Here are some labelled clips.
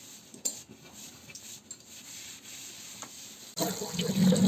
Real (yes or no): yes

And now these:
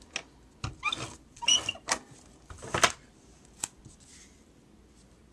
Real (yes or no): yes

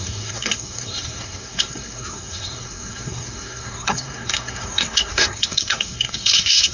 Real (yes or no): no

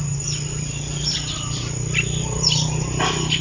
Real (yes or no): yes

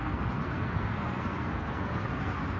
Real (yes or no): no